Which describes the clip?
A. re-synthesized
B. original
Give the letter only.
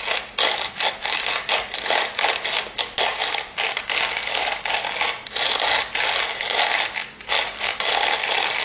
B